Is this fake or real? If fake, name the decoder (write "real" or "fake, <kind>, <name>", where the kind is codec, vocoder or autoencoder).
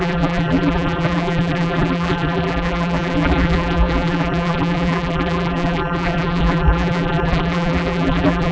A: fake, vocoder, BigVGAN v2